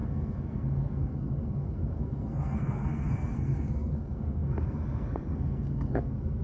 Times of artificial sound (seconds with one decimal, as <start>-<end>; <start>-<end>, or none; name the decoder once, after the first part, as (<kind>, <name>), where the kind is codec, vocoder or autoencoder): 0.0-6.4 (codec, SNAC)